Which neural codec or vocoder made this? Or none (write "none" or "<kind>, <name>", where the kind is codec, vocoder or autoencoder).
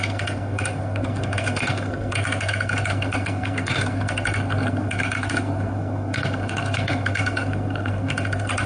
codec, SNAC